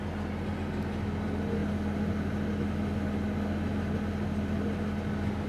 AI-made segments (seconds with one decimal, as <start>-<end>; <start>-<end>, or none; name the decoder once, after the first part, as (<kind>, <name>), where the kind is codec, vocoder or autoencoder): none